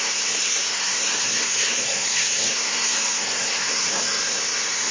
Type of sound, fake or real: fake